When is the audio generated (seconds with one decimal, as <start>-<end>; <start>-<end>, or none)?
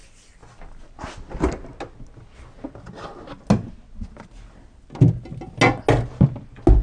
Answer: none